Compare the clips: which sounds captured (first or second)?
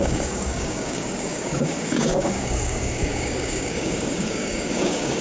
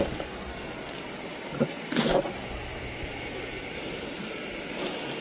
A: second